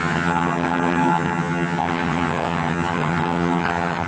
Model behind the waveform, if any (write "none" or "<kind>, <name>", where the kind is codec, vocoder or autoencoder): vocoder, HiFi-GAN